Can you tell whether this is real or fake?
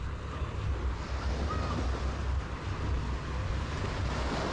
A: real